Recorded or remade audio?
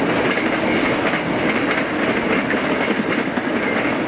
recorded